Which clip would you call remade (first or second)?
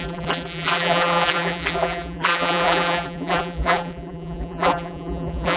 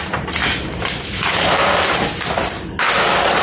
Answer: first